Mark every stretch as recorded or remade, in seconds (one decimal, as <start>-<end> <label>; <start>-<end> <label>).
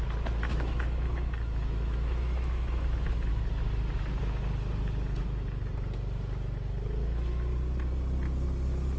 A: 0.0-0.5 recorded; 0.5-3.3 remade; 3.3-9.0 recorded